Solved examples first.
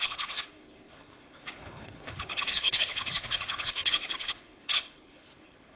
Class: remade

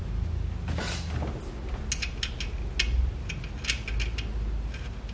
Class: recorded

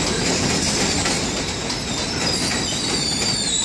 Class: recorded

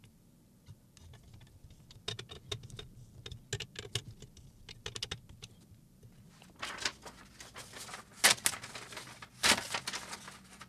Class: recorded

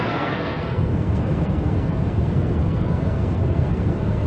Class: remade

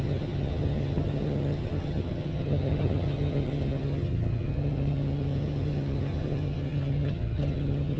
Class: remade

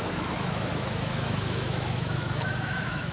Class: remade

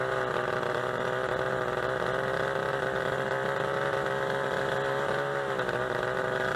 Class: recorded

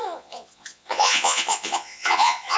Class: remade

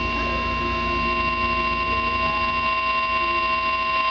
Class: recorded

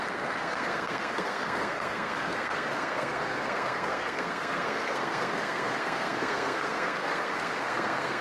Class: remade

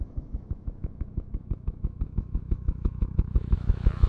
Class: remade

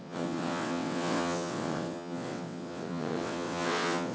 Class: remade